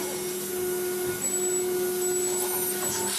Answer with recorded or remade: recorded